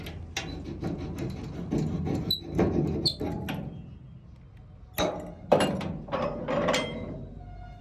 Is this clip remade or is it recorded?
recorded